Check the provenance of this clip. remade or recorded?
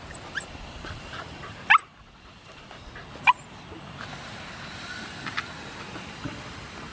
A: recorded